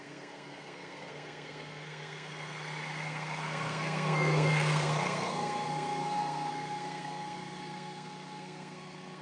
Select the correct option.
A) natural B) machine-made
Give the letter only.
B